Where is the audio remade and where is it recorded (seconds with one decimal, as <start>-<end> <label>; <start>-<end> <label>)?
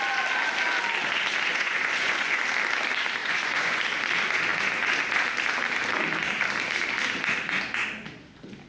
0.0-1.5 recorded; 1.5-2.4 remade; 2.4-3.2 recorded; 3.2-3.8 remade; 3.8-8.7 recorded